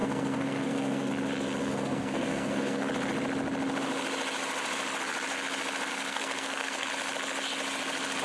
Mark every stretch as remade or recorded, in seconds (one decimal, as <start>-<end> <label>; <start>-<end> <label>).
0.0-1.1 remade; 1.1-1.6 recorded; 1.6-2.9 remade; 2.9-5.9 recorded; 5.9-6.9 remade; 6.9-8.2 recorded